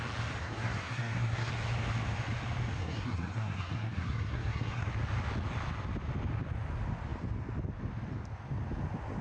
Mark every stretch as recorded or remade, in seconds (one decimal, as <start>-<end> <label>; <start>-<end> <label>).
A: 0.0-0.4 recorded; 0.4-1.5 remade; 1.5-2.8 recorded; 2.8-4.9 remade; 4.9-9.2 recorded